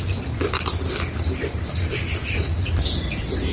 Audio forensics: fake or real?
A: fake